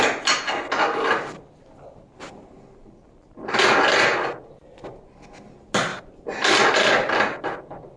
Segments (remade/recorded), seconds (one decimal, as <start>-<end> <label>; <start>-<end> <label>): 0.0-4.1 recorded; 4.1-4.7 remade; 4.7-5.9 recorded; 5.9-8.0 remade